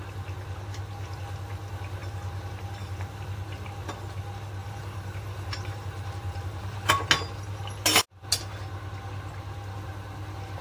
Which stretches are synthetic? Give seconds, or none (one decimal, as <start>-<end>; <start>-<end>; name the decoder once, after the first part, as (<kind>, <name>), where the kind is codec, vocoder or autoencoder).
4.6-6.9 (vocoder, BigVGAN v2)

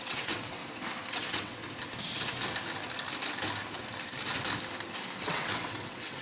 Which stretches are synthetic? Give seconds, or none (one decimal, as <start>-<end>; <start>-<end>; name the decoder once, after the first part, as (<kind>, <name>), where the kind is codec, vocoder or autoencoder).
0.0-0.6 (vocoder, WaveNeXt); 1.1-1.6; 5.3-6.2